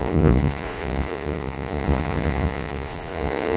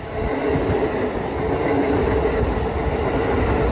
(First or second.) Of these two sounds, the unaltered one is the second